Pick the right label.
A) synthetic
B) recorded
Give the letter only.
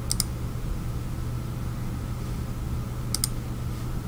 B